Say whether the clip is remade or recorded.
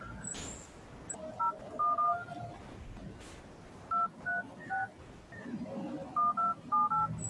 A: recorded